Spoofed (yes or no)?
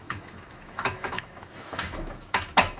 yes